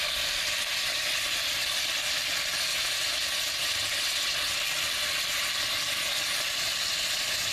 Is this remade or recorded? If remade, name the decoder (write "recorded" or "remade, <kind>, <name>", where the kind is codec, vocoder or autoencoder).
recorded